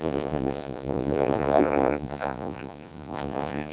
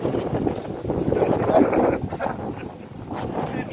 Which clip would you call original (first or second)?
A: second